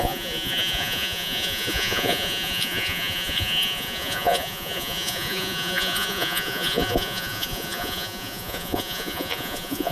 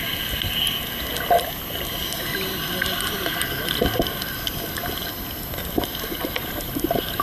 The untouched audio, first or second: second